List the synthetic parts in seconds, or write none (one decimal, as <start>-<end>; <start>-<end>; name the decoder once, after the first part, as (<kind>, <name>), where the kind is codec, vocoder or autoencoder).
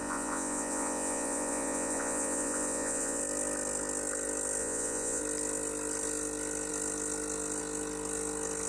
0.0-3.2 (vocoder, Vocos); 4.6-5.2